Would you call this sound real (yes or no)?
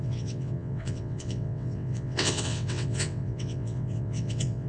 no